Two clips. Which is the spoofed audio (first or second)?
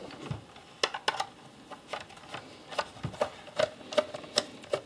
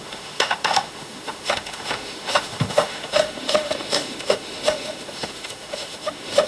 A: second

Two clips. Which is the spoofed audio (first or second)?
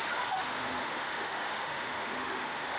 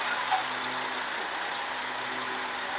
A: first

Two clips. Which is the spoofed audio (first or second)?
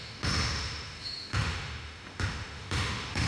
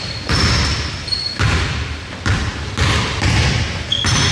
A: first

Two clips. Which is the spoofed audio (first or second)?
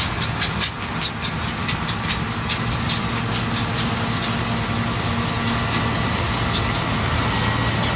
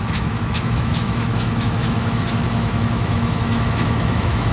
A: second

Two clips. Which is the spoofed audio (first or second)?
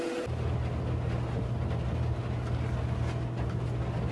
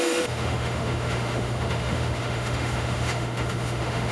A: second